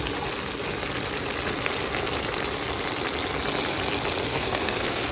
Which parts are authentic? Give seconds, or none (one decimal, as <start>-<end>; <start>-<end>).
0.0-4.2